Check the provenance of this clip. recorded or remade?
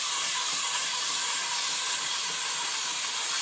recorded